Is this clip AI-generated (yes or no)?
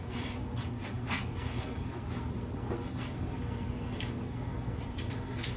yes